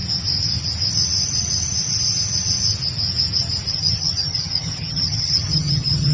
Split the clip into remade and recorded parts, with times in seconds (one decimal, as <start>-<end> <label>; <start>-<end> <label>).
0.0-3.7 recorded; 3.7-6.1 remade